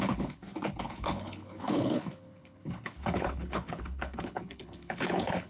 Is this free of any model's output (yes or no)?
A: no